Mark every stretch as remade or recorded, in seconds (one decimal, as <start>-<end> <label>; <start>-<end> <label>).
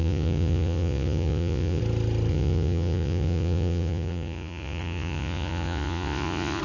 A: 0.0-1.8 remade; 1.8-2.3 recorded; 2.3-6.6 remade